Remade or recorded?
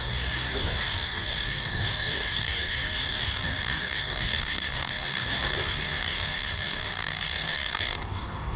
remade